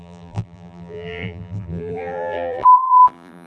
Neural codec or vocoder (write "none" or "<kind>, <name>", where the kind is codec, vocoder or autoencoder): vocoder, BigVGAN v2